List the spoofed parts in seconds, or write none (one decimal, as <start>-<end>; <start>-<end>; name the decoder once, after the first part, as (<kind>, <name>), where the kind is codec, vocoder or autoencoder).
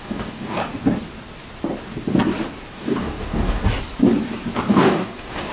0.0-0.6 (codec, DAC); 2.7-3.6; 4.7-5.5